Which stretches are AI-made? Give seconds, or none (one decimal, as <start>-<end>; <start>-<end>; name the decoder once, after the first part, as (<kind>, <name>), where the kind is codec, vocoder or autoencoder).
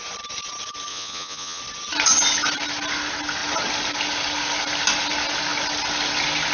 0.9-1.6 (vocoder, Vocos)